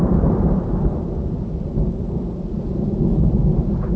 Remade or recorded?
recorded